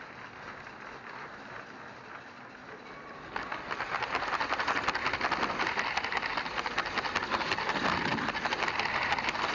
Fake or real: real